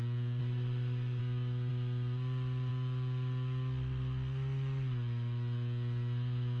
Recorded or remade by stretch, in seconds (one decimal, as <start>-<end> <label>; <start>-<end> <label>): 0.0-0.4 recorded; 0.4-1.2 remade; 1.2-6.6 recorded